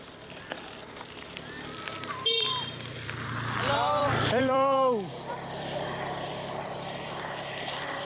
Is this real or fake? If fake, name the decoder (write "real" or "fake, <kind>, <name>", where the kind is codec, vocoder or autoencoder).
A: fake, vocoder, BigVGAN v2